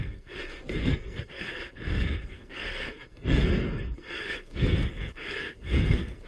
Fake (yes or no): yes